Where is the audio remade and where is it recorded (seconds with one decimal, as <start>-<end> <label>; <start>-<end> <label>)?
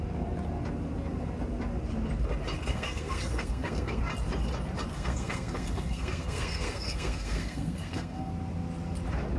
0.0-2.7 recorded; 2.7-4.0 remade; 4.0-4.9 recorded; 4.9-8.3 remade; 8.3-9.4 recorded